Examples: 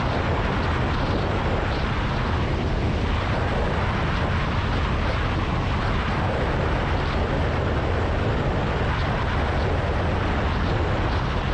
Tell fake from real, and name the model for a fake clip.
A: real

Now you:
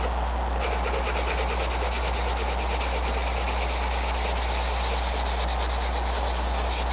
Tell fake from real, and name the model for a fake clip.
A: real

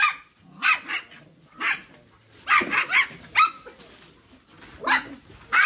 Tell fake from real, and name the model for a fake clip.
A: real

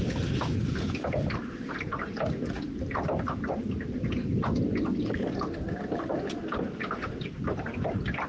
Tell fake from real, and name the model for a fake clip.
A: fake, vocoder, BigVGAN v2